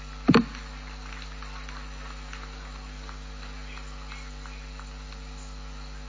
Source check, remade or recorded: recorded